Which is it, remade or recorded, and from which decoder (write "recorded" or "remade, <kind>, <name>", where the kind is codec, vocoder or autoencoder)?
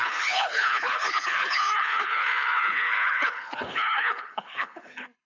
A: remade, codec, HILCodec